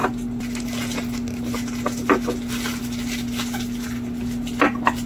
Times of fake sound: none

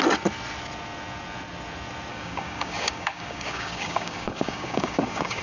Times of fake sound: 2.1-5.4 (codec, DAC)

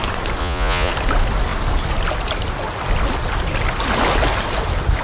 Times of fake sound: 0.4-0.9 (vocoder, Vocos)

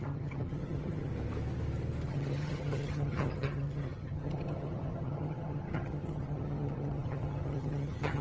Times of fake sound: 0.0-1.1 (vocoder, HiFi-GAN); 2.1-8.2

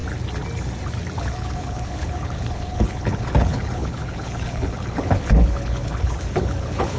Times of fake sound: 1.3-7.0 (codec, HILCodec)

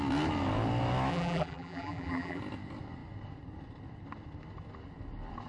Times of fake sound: 1.1-2.4 (vocoder, BigVGAN v2)

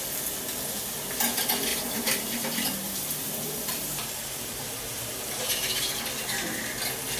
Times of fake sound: 1.7-6.0 (vocoder, BigVGAN v2)

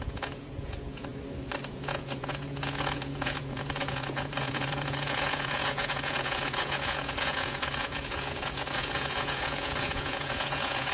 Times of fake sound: 0.0-1.1 (vocoder, Vocos); 1.7-10.9